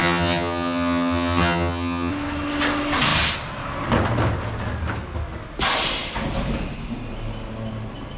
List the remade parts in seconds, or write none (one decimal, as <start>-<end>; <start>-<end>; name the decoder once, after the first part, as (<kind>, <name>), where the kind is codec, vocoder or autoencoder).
0.0-2.1 (vocoder, HiFi-GAN)